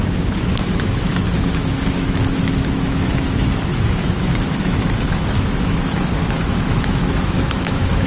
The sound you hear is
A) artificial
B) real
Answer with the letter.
A